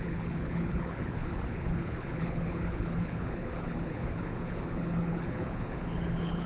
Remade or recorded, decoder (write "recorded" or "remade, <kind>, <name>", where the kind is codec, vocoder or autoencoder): remade, codec, HILCodec